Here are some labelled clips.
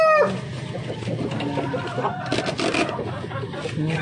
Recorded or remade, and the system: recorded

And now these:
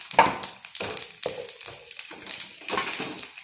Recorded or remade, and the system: recorded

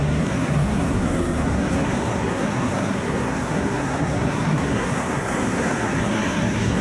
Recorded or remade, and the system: remade, codec, SNAC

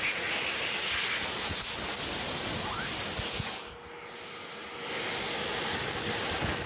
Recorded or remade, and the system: recorded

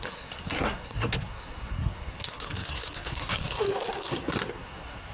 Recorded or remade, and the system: remade, codec, SNAC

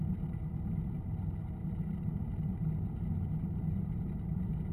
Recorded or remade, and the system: recorded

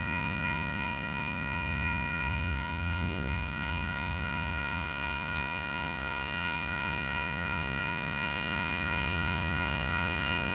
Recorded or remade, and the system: remade, vocoder, Vocos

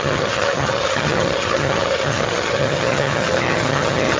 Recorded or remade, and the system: remade, vocoder, HiFi-GAN